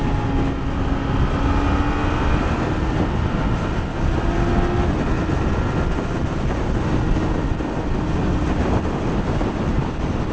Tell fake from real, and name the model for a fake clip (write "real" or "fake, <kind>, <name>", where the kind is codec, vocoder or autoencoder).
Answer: real